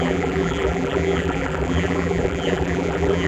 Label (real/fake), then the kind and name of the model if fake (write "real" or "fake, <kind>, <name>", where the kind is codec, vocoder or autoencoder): fake, vocoder, BigVGAN v2